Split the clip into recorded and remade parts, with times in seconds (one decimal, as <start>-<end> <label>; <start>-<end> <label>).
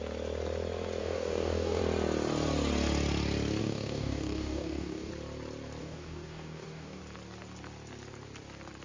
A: 0.0-1.0 recorded; 1.0-1.8 remade; 1.8-3.6 recorded; 3.6-5.1 remade; 5.1-5.8 recorded; 5.8-7.0 remade; 7.0-8.8 recorded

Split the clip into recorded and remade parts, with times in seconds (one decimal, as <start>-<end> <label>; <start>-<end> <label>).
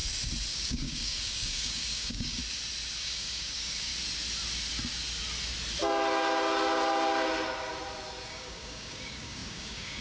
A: 0.0-0.5 recorded; 0.5-2.4 remade; 2.4-3.0 recorded; 3.0-3.9 remade; 3.9-8.3 recorded; 8.3-10.0 remade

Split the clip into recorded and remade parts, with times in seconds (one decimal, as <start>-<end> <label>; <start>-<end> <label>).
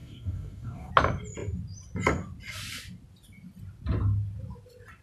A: 0.0-0.9 remade; 0.9-5.0 recorded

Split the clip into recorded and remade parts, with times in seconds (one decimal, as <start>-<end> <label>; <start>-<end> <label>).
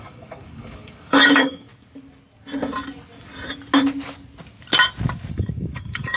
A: 0.0-1.7 remade; 1.7-5.3 recorded; 5.3-6.2 remade